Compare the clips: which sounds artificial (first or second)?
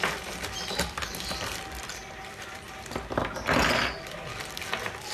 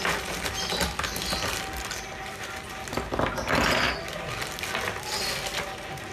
first